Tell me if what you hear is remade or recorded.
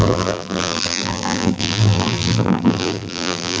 remade